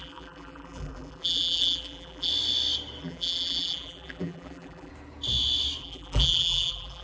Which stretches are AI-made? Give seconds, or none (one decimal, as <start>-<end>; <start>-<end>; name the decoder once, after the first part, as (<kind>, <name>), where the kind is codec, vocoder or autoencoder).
0.0-2.3 (vocoder, BigVGAN v2); 3.0-4.9; 5.8-7.0